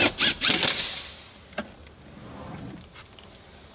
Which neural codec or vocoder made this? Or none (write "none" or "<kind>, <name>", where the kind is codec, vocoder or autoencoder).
none